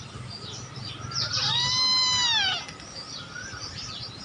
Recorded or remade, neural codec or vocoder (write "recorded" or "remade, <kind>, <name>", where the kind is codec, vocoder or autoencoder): recorded